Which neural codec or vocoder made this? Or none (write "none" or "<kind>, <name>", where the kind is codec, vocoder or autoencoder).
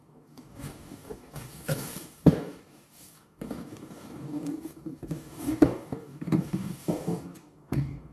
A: codec, DAC